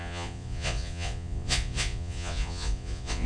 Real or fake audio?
fake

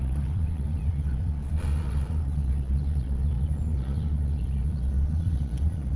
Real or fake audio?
fake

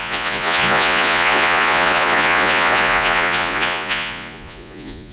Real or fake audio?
fake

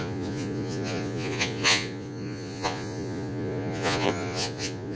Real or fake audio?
fake